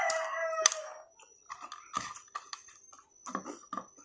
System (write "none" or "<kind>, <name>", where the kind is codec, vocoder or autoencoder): none